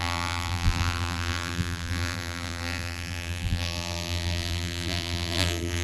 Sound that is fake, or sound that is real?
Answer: fake